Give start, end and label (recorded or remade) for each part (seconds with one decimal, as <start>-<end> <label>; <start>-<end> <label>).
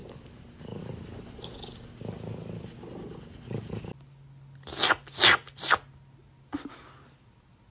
0.0-7.7 recorded